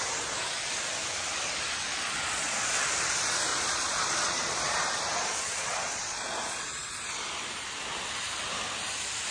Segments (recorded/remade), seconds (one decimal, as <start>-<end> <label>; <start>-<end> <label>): 0.0-1.9 recorded; 1.9-2.8 remade; 2.8-3.5 recorded; 3.5-4.8 remade; 4.8-5.2 recorded; 5.2-6.9 remade; 6.9-9.3 recorded